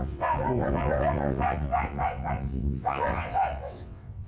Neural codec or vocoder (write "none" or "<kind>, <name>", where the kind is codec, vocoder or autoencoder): vocoder, WaveNeXt